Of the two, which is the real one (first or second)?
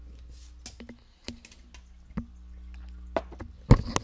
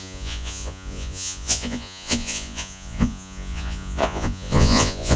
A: first